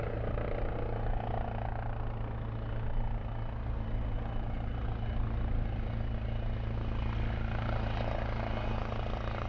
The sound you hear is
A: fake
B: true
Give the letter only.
B